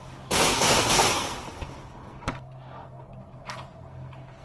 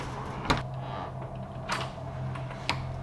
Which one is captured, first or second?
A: second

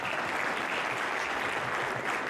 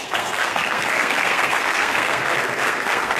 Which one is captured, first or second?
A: first